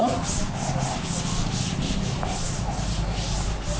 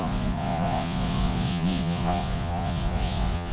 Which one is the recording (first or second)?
first